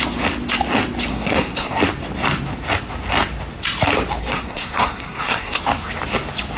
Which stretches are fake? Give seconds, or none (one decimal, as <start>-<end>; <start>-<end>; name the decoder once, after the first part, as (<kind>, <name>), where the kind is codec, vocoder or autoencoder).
1.1-1.8 (codec, SNAC); 4.2-5.6